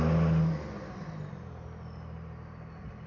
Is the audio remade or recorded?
recorded